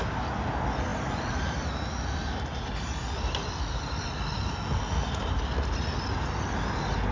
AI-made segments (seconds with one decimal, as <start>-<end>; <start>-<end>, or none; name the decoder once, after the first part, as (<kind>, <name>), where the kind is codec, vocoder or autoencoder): none